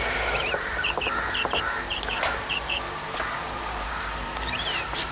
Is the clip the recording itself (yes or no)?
no